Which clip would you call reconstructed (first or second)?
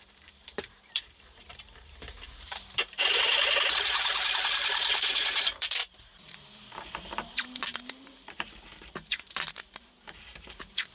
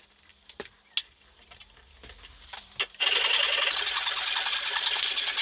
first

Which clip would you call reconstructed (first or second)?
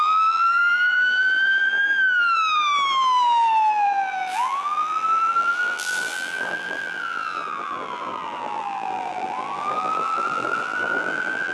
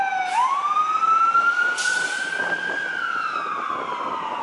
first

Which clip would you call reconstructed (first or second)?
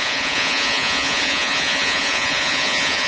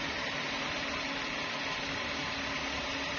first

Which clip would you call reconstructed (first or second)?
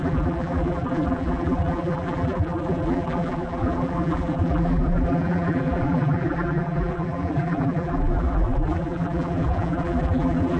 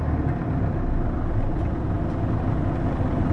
first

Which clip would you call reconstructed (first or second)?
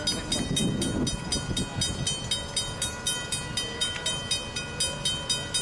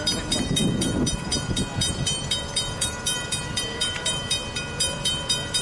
second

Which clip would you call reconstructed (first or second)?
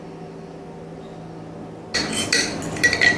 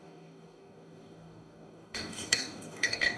second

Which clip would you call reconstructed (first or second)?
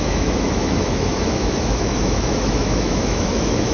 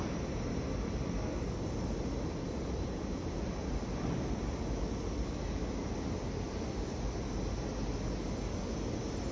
first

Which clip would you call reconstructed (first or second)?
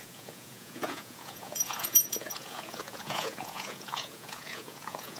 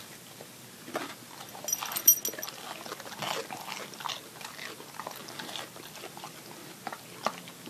first